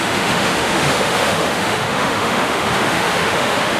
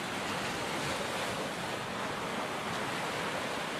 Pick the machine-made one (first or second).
first